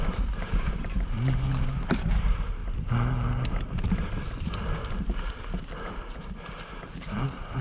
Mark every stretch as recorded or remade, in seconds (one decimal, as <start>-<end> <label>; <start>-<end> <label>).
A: 0.0-2.6 remade; 2.6-6.1 recorded; 6.1-7.6 remade